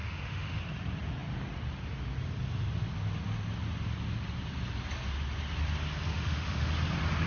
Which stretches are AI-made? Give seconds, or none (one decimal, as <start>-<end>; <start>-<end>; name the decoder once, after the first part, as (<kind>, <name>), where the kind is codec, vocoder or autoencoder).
0.0-0.6 (autoencoder, DAC-VAE); 6.1-6.7